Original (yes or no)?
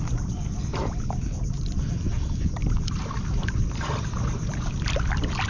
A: yes